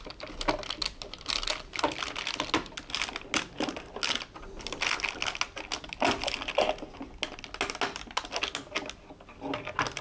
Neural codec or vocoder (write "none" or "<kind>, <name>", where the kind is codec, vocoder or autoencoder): none